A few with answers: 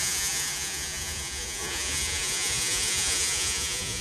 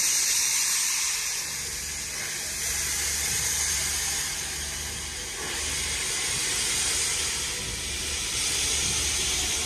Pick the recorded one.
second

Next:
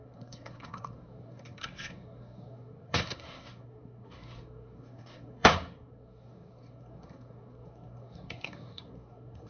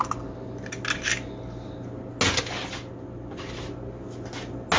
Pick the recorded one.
second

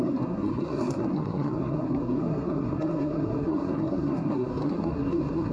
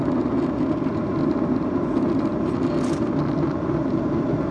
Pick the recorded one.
second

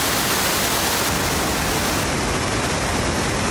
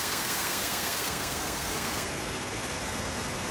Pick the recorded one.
first